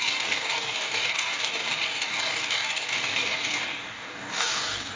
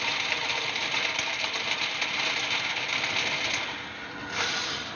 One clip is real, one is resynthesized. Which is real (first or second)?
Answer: second